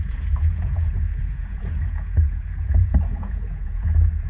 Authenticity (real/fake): fake